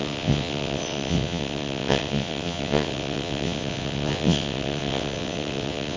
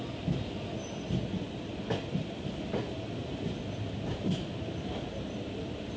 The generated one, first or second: first